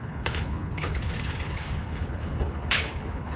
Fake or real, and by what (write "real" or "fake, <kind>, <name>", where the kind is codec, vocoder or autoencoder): fake, codec, HILCodec